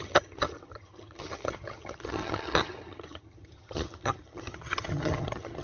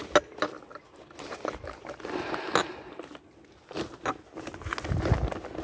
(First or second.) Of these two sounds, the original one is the second